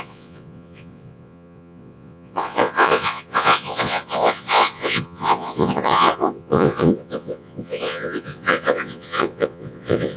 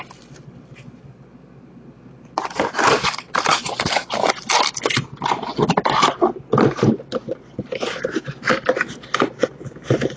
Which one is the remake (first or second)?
first